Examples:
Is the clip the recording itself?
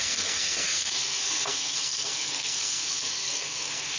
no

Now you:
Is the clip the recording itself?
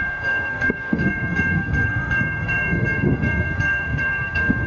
no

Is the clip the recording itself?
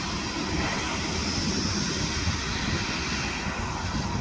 yes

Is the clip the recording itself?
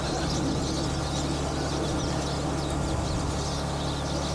yes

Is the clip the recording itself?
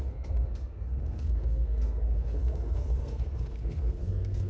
no